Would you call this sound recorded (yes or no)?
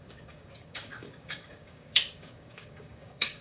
no